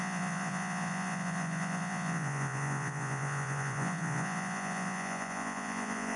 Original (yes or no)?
no